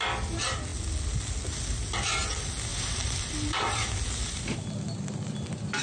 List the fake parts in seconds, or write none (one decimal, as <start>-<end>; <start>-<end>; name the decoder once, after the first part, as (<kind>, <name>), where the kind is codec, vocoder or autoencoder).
2.7-5.8 (vocoder, BigVGAN v2)